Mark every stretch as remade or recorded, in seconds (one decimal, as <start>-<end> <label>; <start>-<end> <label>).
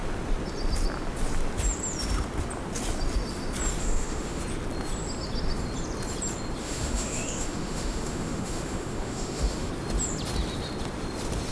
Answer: 0.0-3.8 recorded; 3.8-4.4 remade; 4.4-6.6 recorded; 6.6-9.7 remade; 9.7-11.5 recorded